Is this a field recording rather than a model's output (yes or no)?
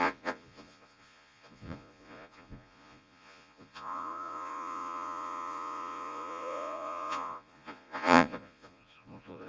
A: no